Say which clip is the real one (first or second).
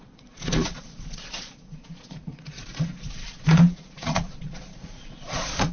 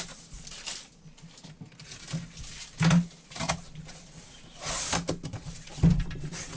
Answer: second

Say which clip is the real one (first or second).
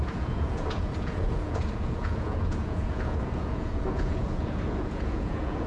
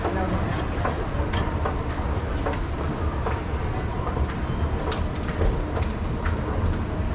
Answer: second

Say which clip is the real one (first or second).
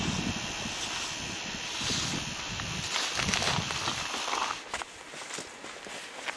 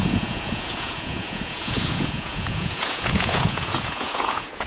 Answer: first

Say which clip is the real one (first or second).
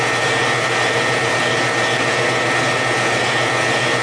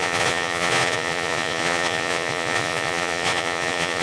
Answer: first